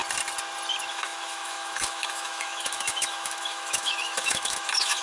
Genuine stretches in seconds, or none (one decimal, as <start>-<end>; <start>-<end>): 0.0-0.9